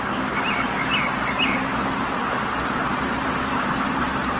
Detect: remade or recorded recorded